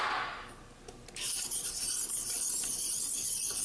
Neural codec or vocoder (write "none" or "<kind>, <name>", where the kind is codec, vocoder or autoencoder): none